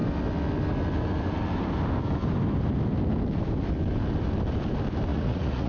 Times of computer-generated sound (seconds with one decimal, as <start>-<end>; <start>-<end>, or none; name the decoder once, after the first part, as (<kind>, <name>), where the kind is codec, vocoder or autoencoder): 5.1-5.7 (vocoder, Vocos)